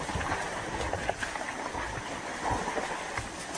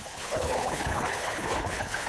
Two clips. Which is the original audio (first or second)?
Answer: first